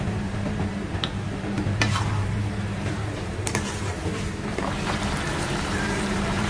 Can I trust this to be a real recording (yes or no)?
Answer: no